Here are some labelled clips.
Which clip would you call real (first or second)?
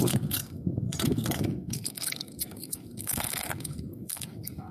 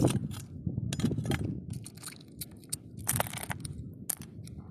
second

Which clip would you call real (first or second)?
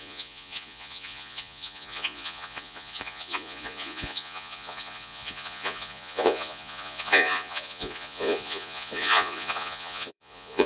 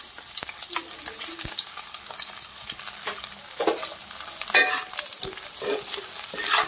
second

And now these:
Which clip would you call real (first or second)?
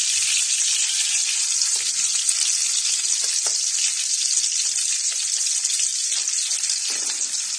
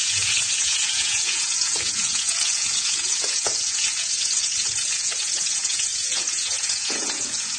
first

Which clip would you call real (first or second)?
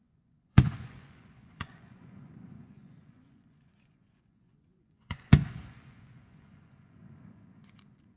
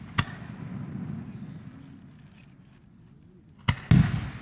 second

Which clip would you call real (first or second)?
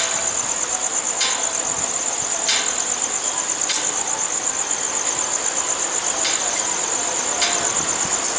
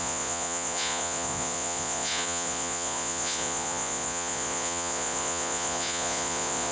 first